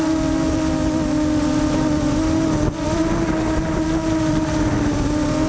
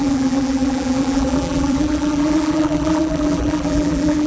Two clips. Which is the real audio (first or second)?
first